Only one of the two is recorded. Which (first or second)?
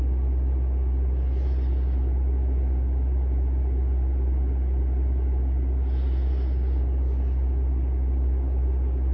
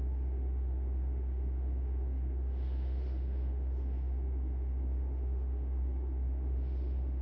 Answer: first